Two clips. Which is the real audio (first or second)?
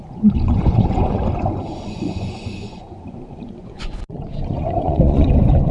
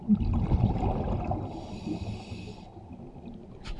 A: second